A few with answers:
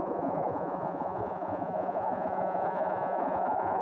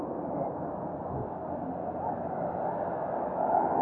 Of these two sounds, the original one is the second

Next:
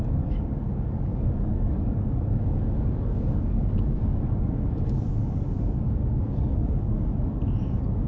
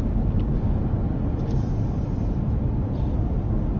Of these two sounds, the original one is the second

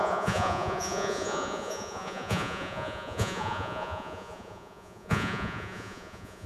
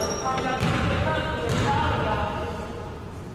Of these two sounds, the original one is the second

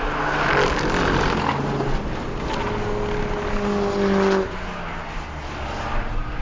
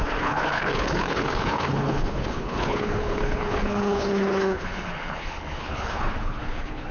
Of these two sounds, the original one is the first